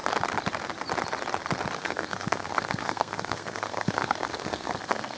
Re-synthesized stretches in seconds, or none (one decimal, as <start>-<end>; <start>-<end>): 1.8-5.2